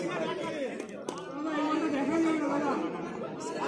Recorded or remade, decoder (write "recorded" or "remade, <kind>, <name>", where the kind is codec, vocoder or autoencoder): recorded